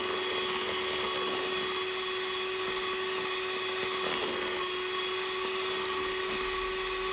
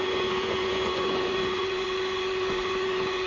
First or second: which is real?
first